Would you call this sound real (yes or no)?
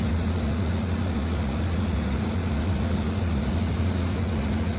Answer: no